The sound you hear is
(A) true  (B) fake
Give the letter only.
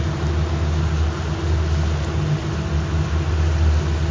A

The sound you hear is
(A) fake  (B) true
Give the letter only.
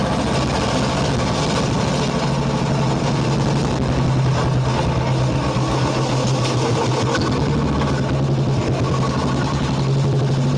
B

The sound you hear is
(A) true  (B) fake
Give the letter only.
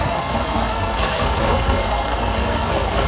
B